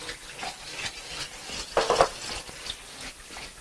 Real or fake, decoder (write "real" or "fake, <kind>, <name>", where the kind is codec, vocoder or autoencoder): real